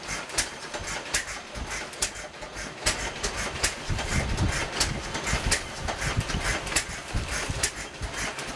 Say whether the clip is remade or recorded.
recorded